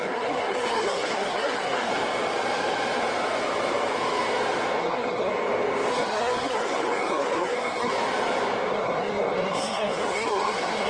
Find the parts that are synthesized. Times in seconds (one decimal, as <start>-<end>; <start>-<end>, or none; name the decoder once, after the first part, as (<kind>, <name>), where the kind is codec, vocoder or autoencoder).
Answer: 0.0-1.9 (codec, SNAC); 4.8-5.3; 5.9-7.9; 8.7-10.9